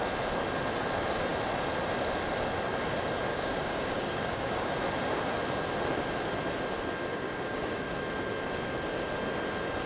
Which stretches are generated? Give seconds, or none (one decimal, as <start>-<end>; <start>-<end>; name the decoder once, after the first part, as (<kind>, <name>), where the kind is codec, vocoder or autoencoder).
3.3-4.7 (codec, DAC); 7.1-8.0